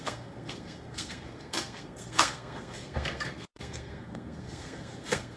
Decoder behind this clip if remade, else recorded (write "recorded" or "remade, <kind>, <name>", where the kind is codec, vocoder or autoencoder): remade, codec, SNAC